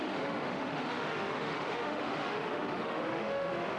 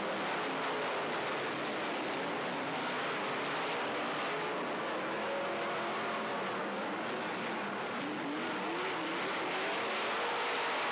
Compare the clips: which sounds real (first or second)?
second